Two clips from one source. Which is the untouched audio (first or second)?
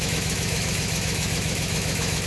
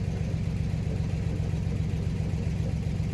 second